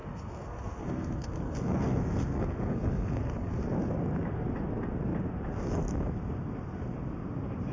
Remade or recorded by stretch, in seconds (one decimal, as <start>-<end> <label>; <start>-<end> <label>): 0.0-3.6 remade; 3.6-7.7 recorded

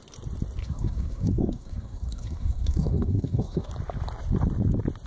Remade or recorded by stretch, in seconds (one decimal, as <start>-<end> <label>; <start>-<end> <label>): 0.0-0.6 recorded; 0.6-3.7 remade; 3.7-5.1 recorded